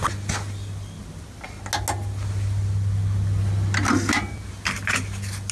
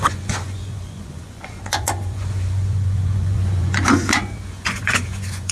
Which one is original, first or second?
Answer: first